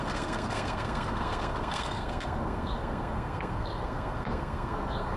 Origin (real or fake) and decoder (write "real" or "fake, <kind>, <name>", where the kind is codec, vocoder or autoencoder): fake, codec, SNAC